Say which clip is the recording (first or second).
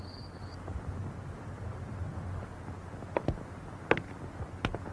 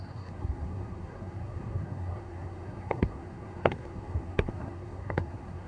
first